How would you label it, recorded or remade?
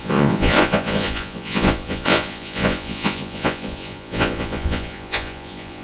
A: remade